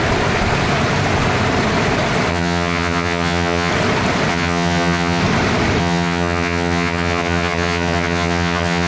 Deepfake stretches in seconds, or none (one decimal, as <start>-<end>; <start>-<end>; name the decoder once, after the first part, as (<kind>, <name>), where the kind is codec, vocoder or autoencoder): 2.3-3.7 (vocoder, HiFi-GAN); 4.3-5.2; 5.8-8.9